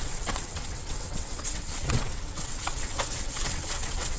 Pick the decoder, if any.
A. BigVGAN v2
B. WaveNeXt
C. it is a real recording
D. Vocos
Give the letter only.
B